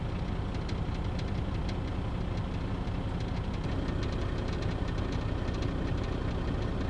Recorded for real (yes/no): yes